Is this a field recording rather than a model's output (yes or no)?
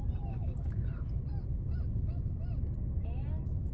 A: yes